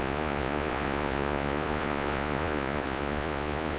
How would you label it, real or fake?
fake